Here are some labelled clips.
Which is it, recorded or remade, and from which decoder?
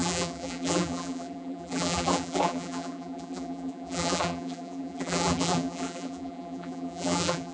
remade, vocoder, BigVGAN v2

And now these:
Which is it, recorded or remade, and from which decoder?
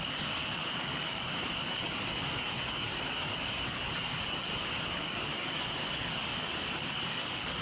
remade, codec, DAC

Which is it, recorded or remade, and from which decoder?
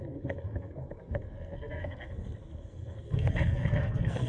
remade, codec, SNAC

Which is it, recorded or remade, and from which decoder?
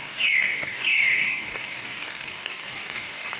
remade, codec, DAC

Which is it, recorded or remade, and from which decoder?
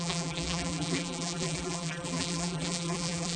remade, vocoder, BigVGAN v2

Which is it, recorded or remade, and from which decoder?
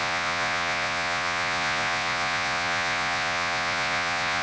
remade, vocoder, Vocos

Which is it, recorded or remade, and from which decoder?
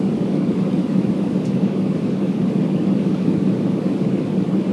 remade, codec, DAC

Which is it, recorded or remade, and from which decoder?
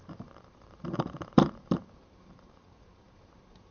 remade, vocoder, BigVGAN v2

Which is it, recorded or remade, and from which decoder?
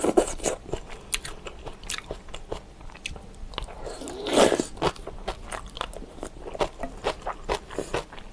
recorded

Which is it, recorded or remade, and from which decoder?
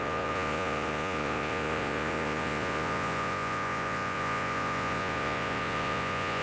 remade, vocoder, Vocos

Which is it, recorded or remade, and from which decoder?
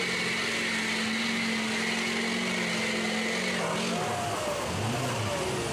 recorded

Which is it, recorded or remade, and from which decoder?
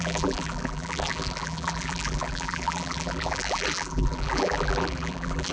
remade, vocoder, BigVGAN v2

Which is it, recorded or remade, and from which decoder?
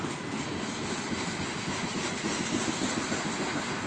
recorded